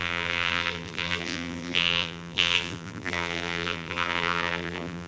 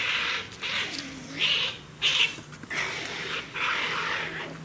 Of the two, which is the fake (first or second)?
first